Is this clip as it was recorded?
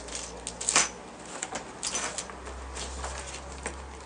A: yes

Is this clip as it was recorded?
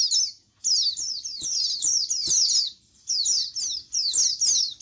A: yes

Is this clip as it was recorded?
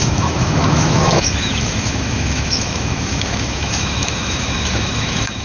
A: no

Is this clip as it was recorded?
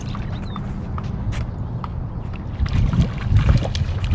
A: yes